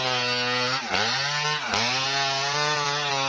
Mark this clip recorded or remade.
recorded